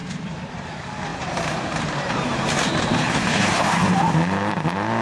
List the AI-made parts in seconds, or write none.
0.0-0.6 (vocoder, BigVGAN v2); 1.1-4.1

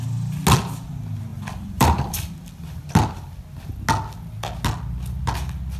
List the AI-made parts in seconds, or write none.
1.3-2.8 (vocoder, BigVGAN v2)

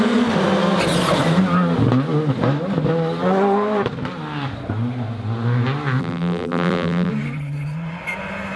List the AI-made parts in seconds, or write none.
6.0-7.1 (vocoder, BigVGAN v2)

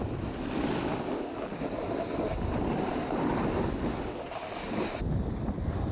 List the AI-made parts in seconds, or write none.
2.3-3.3 (vocoder, BigVGAN v2)

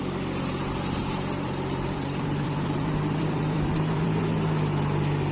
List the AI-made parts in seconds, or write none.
1.0-4.2 (vocoder, BigVGAN v2)